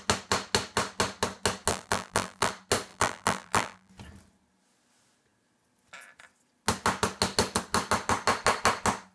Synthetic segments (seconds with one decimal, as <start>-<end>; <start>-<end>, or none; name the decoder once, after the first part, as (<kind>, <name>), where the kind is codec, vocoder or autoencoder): 1.7-2.5 (vocoder, BigVGAN v2); 2.9-3.9